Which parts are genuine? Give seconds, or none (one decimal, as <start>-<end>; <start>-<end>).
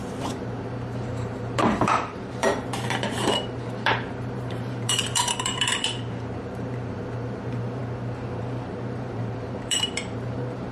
7.8-8.4